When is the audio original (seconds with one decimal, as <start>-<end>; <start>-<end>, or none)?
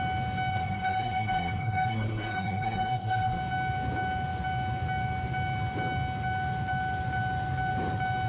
0.0-0.5; 3.4-8.3